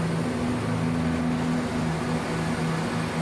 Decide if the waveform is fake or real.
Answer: real